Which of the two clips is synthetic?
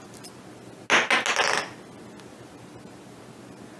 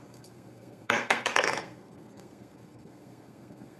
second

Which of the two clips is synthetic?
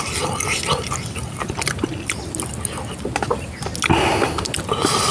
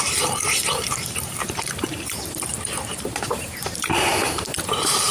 second